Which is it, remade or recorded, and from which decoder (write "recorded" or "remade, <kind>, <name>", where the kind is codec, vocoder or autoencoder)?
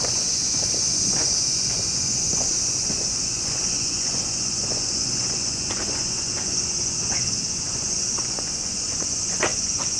remade, vocoder, Vocos